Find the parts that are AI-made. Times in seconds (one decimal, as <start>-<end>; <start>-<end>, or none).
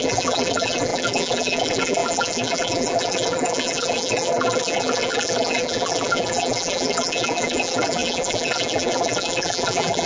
0.0-10.1